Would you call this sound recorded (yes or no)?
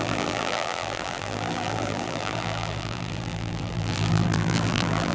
no